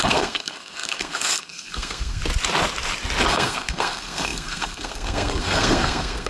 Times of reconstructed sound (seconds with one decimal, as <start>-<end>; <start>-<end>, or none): 0.0-2.2; 3.3-6.3

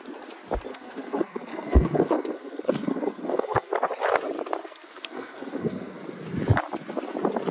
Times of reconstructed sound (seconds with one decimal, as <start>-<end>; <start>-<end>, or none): 0.7-3.7; 4.6-6.0